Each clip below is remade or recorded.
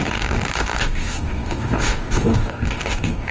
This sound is remade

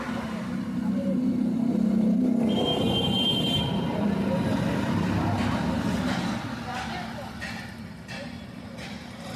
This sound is remade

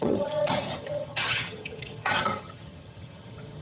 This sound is remade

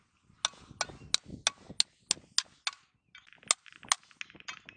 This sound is recorded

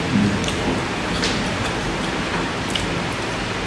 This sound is remade